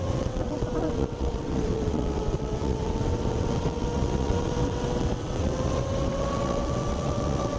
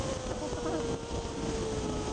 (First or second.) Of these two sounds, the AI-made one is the first